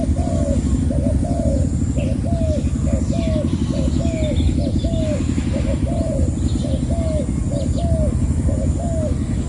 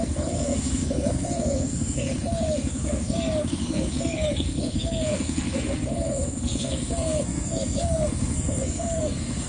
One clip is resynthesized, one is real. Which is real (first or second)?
first